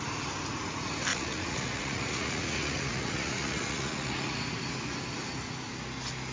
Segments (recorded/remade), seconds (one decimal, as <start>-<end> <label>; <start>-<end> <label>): 0.0-1.1 recorded; 1.1-4.4 remade; 4.4-6.3 recorded